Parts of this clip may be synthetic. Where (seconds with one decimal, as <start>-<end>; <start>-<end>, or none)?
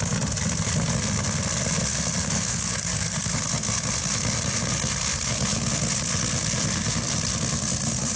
2.2-3.5